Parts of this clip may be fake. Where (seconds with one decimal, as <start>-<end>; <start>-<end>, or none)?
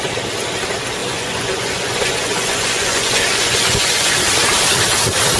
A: 1.0-4.2